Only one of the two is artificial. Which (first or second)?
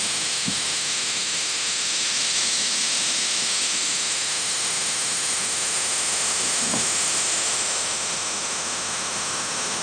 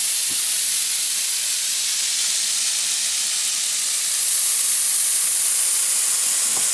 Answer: first